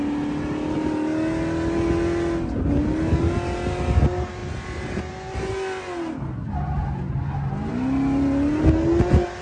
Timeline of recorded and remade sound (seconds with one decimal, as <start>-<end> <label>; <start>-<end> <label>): 0.0-9.4 recorded